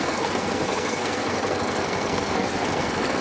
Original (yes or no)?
no